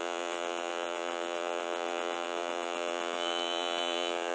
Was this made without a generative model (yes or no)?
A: no